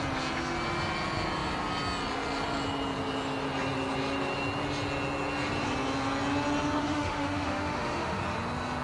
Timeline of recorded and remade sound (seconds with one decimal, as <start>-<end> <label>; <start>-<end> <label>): 0.0-6.8 recorded; 6.8-8.2 remade; 8.2-8.8 recorded